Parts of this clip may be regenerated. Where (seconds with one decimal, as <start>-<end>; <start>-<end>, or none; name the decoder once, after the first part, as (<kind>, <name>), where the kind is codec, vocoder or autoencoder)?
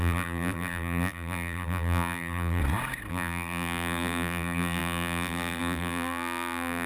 0.0-2.6 (vocoder, BigVGAN v2); 3.1-6.9